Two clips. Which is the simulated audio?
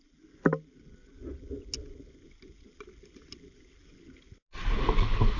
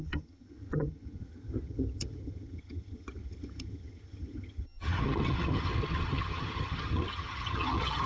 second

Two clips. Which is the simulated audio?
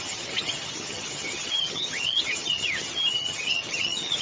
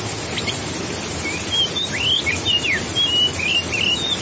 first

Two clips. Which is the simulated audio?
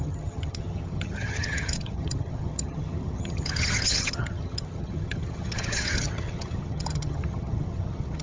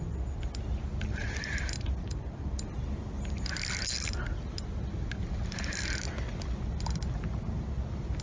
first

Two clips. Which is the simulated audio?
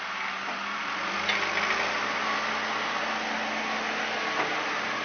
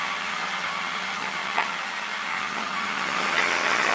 second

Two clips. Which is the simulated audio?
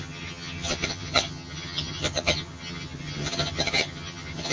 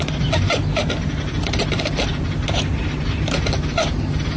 first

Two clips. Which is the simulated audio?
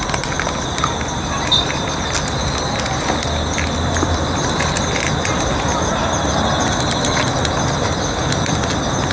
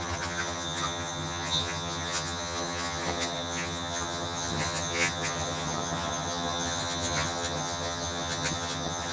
second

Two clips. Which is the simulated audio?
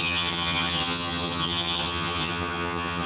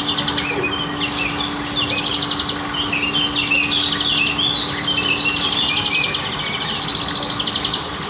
first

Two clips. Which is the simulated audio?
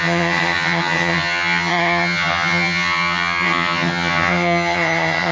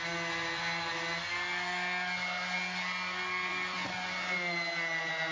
first